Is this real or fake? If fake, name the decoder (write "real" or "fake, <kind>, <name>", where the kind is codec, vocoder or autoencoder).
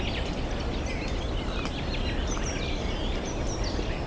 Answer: real